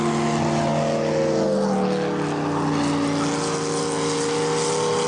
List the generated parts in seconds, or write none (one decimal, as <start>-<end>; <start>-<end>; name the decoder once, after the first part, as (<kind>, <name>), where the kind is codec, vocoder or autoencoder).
none

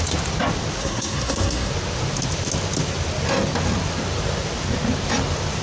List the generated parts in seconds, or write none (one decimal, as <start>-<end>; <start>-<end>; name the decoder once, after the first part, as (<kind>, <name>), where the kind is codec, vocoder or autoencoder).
0.8-1.7 (codec, SNAC)

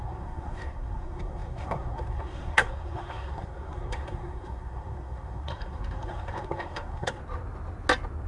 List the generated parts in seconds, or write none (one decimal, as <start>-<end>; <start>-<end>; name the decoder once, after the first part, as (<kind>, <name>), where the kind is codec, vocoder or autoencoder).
0.0-7.2 (codec, SNAC)

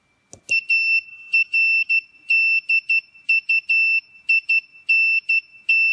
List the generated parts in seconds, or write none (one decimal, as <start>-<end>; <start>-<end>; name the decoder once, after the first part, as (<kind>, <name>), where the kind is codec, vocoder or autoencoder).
1.1-1.9 (autoencoder, DAC-VAE)

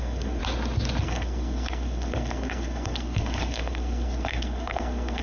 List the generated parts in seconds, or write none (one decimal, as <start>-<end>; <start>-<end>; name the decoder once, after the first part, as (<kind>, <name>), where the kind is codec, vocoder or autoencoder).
0.0-0.4 (codec, SNAC); 1.0-5.2